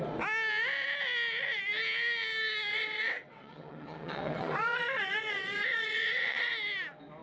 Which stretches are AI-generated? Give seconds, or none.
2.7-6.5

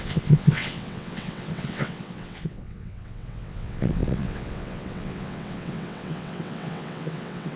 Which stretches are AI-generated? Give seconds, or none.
0.0-7.6

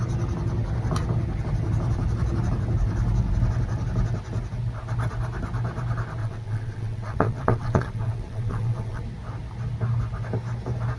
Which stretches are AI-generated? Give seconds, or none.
6.2-9.0